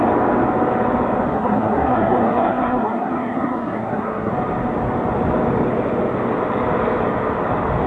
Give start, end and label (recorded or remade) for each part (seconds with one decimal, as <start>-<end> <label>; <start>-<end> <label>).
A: 0.0-1.3 recorded; 1.3-4.3 remade; 4.3-7.9 recorded